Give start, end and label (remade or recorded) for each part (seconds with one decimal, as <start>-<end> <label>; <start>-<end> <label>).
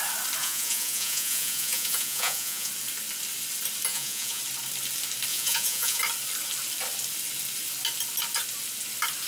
0.0-0.4 recorded; 0.4-2.7 remade; 2.7-3.9 recorded; 3.9-4.4 remade; 4.4-5.3 recorded; 5.3-6.0 remade; 6.0-9.3 recorded